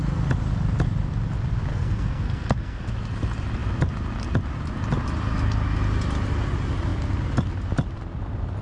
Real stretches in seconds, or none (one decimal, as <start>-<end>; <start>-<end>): 0.0-1.7; 2.9-8.6